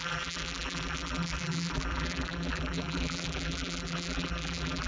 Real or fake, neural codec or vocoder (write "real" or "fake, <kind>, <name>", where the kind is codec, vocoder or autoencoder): fake, vocoder, BigVGAN v2